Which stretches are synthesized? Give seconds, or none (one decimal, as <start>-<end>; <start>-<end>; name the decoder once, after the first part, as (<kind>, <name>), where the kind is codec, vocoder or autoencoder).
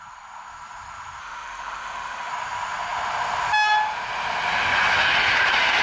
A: 1.2-2.3 (autoencoder, DAC-VAE)